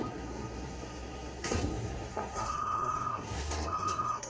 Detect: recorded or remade remade